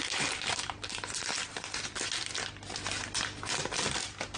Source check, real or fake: real